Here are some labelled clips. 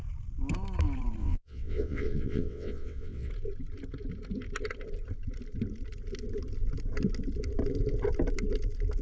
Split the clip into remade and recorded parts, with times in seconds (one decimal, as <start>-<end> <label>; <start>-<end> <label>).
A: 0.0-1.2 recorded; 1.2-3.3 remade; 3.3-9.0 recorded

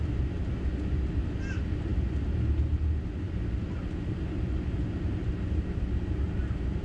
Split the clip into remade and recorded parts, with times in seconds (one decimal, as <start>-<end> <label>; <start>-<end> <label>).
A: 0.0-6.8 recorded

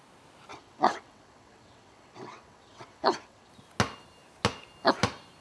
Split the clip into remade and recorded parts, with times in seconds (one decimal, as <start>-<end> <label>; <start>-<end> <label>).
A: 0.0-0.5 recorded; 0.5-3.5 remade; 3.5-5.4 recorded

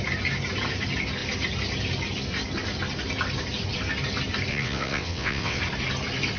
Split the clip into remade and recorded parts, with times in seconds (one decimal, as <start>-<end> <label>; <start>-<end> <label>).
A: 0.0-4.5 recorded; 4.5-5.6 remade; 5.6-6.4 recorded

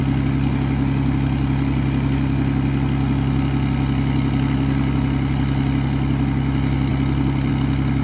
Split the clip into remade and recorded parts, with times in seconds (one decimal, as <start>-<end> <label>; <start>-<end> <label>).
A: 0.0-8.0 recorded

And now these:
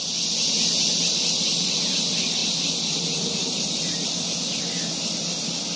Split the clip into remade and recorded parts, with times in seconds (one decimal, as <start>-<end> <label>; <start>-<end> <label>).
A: 0.0-5.8 recorded